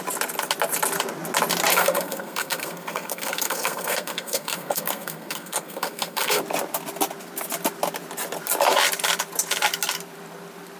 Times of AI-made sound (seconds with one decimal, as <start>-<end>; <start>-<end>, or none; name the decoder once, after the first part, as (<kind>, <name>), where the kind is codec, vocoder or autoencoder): 1.7-6.4 (codec, SNAC)